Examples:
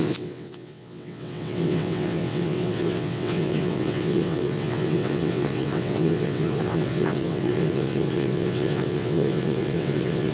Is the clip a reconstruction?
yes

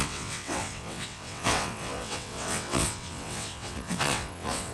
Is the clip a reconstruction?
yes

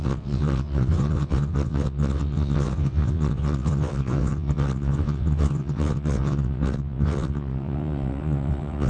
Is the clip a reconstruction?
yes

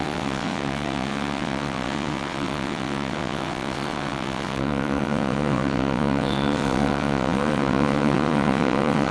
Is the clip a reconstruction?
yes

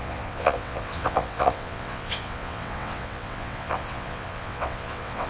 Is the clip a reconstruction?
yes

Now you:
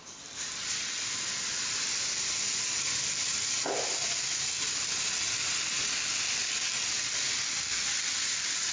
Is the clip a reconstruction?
no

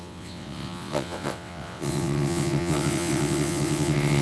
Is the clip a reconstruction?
yes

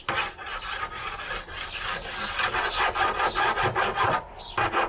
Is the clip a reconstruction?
no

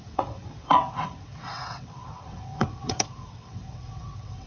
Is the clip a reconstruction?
yes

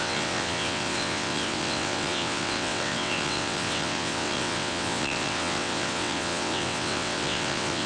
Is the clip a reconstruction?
yes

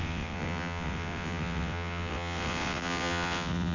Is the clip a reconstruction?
yes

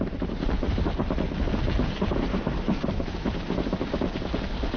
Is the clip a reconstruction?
no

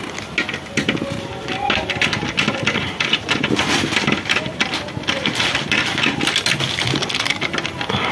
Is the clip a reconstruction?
no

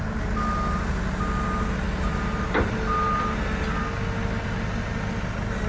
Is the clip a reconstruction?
no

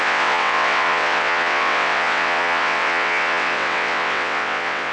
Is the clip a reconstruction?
yes